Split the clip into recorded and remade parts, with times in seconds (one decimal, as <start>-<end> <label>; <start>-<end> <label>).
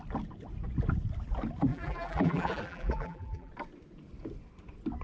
0.0-1.7 recorded; 1.7-3.5 remade; 3.5-5.0 recorded